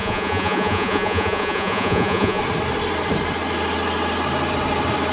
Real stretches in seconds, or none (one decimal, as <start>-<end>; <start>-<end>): 2.4-5.1